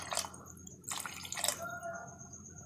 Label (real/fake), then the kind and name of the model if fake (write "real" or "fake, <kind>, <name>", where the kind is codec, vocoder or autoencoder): real